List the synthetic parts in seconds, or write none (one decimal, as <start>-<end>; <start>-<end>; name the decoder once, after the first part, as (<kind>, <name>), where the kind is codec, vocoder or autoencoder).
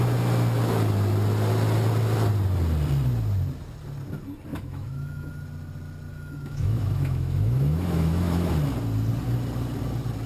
4.5-5.3 (autoencoder, DAC-VAE); 6.1-8.5